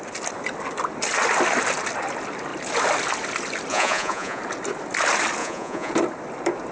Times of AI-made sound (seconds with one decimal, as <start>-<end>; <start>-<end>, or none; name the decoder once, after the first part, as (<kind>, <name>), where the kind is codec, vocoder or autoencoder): 3.7-4.4 (vocoder, Vocos); 5.4-5.9